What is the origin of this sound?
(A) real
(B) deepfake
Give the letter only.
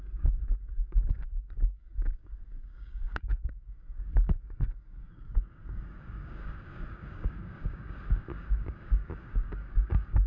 B